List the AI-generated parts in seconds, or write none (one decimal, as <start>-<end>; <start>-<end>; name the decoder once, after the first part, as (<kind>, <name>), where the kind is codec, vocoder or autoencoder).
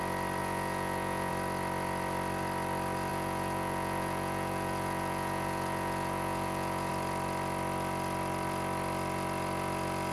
0.4-1.3 (vocoder, Vocos); 3.1-6.9